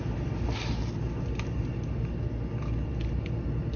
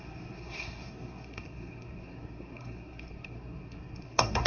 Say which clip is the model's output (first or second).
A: second